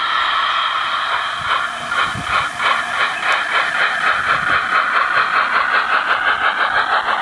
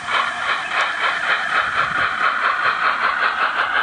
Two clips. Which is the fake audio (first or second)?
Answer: second